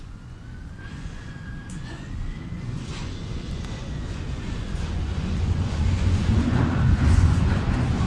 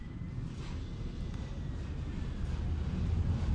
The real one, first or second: second